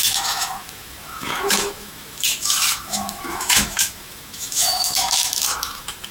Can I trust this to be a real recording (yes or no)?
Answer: no